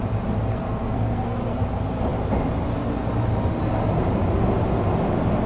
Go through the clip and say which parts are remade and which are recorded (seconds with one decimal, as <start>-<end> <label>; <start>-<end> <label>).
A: 0.0-0.5 recorded; 0.5-1.6 remade; 1.6-5.5 recorded